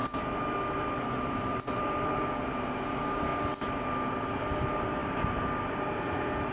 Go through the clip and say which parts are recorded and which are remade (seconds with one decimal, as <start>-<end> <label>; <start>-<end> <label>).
0.0-3.3 remade; 3.3-4.2 recorded; 4.2-6.5 remade

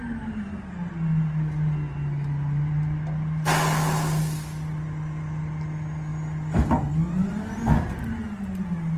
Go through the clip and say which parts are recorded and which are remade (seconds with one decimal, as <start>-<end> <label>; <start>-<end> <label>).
0.0-9.0 recorded

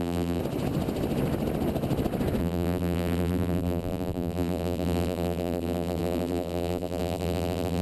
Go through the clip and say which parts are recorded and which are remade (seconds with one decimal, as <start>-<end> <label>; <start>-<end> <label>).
0.0-0.4 remade; 0.4-2.4 recorded; 2.4-7.8 remade

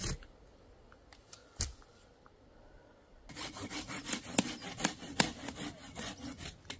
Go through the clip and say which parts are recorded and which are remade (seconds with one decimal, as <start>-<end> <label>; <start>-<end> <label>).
0.0-1.4 recorded; 1.4-3.7 remade; 3.7-6.8 recorded

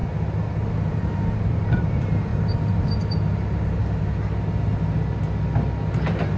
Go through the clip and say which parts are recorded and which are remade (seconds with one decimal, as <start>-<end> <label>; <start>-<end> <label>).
0.0-0.7 recorded; 0.7-2.3 remade; 2.3-6.4 recorded

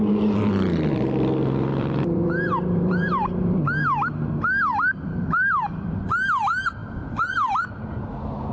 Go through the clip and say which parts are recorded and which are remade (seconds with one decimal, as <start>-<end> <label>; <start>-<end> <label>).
0.0-8.5 remade

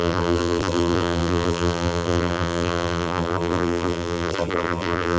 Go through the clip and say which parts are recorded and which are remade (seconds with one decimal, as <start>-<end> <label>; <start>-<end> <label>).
0.0-5.2 remade

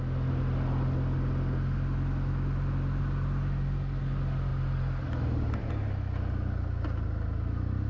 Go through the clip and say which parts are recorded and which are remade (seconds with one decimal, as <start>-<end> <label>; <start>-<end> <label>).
0.0-4.5 recorded; 4.5-5.7 remade; 5.7-7.9 recorded